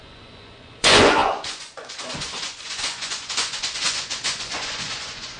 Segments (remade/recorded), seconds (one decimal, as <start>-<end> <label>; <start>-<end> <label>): 0.0-5.4 remade